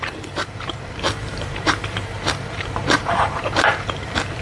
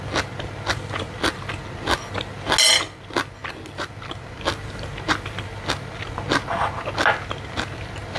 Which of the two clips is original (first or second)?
second